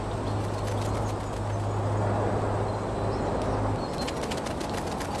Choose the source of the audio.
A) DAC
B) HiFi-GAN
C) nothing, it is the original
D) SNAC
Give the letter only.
C